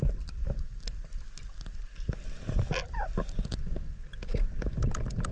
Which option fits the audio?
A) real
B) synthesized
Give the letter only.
A